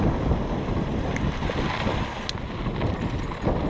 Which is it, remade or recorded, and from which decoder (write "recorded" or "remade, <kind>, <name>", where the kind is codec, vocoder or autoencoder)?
recorded